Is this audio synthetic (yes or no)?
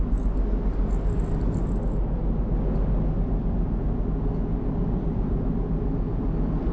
no